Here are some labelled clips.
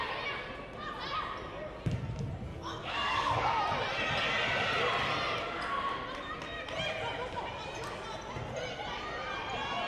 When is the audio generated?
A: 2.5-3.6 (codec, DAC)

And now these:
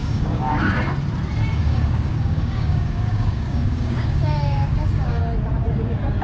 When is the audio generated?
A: 0.0-0.5 (codec, DAC); 1.5-5.2

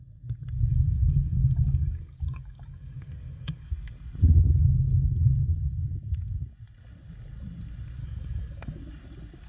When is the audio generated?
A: 0.7-3.7 (codec, DAC); 8.0-8.8

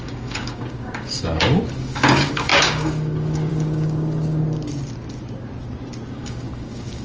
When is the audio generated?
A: 0.0-4.4 (codec, DAC); 6.1-7.0

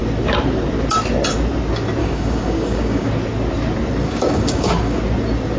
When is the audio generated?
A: 2.0-3.1 (codec, DAC); 4.0-5.0

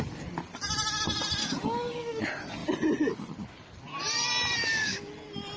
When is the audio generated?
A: 1.4-2.2 (codec, DAC); 4.6-5.1